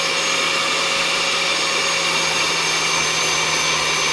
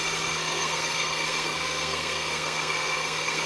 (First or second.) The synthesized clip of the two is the second